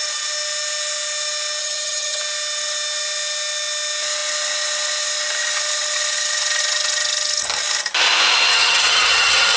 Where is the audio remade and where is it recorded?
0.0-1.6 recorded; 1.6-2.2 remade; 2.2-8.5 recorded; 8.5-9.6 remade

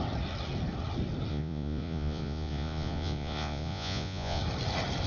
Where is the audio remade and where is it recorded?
0.0-1.3 recorded; 1.3-4.4 remade; 4.4-5.1 recorded

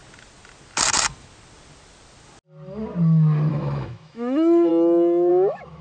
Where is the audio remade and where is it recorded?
0.0-3.5 recorded; 3.5-4.7 remade; 4.7-5.3 recorded; 5.3-5.8 remade